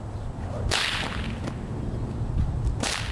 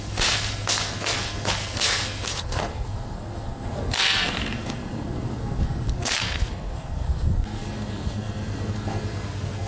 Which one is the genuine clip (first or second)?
first